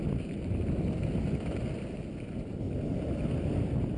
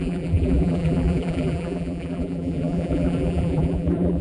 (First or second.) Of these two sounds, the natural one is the first